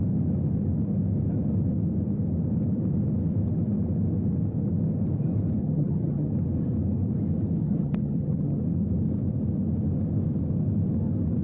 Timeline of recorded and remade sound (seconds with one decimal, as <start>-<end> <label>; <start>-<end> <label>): 0.0-5.6 recorded; 5.6-6.3 remade; 6.3-7.6 recorded; 7.6-8.6 remade; 8.6-11.4 recorded